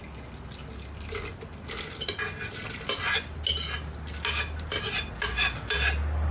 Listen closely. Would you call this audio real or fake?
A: real